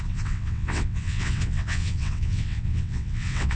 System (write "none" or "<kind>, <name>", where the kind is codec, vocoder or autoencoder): vocoder, WaveNeXt